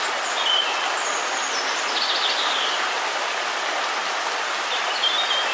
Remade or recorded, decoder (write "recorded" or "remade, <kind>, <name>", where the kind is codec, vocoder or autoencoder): recorded